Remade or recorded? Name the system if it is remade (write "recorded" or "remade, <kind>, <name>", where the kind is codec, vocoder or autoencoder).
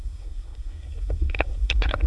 remade, codec, SNAC